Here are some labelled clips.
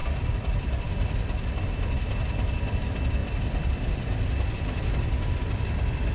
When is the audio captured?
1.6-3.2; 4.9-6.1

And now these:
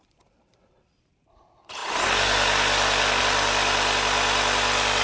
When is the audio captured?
1.8-3.2